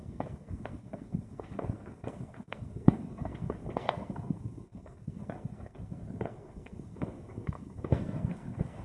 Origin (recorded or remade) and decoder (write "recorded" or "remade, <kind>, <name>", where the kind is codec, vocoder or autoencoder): remade, codec, SNAC